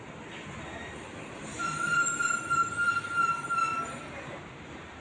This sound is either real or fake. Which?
real